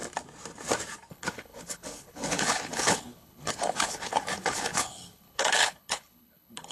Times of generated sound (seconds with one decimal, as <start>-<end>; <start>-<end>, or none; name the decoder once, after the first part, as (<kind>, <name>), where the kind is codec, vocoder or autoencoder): 1.1-6.7 (codec, HILCodec)